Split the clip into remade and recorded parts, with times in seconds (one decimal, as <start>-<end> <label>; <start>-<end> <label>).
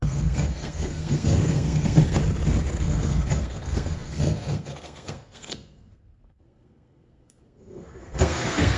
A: 0.0-2.2 remade; 2.2-2.8 recorded; 2.8-8.8 remade